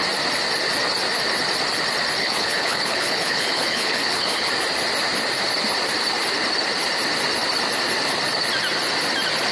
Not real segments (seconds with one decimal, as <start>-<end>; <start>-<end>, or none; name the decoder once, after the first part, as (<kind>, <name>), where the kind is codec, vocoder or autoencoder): 2.2-4.5 (codec, HILCodec)